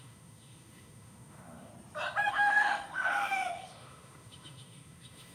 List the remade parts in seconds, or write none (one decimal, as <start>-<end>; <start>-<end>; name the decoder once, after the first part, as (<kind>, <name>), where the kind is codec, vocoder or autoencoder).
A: 0.0-1.7 (autoencoder, DAC-VAE); 2.3-5.3